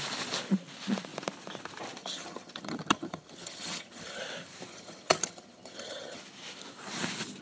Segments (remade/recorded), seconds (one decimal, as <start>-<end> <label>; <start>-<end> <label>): 0.0-2.0 recorded; 2.0-4.2 remade; 4.2-4.7 recorded; 4.7-6.2 remade; 6.2-7.4 recorded